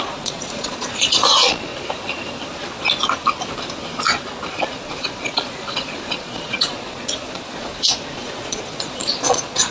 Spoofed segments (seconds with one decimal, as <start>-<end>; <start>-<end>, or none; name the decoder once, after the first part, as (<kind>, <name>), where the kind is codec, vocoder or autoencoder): 0.0-1.7 (vocoder, Vocos); 4.5-7.7; 8.2-9.7